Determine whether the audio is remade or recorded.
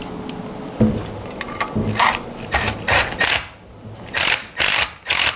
recorded